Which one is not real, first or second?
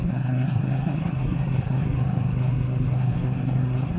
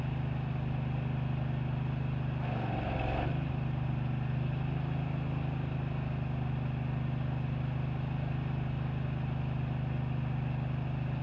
first